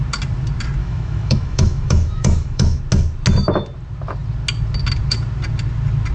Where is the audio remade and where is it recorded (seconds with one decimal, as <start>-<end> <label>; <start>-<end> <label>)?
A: 0.0-0.8 recorded; 0.8-2.8 remade; 2.8-6.1 recorded